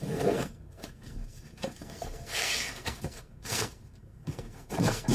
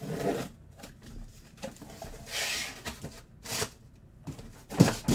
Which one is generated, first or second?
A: first